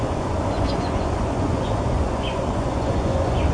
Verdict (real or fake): fake